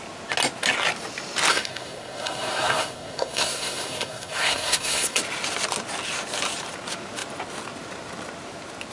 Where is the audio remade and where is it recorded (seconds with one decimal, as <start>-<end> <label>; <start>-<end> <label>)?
0.0-1.5 recorded; 1.5-5.2 remade; 5.2-8.9 recorded